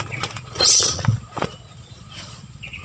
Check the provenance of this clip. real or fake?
fake